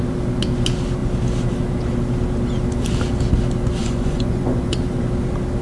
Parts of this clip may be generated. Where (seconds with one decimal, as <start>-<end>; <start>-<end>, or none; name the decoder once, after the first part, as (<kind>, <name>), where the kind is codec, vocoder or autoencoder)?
3.8-4.8 (vocoder, Vocos)